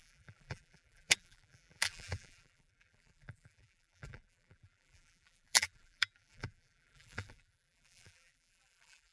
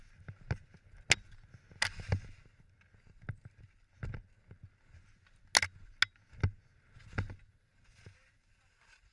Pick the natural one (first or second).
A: second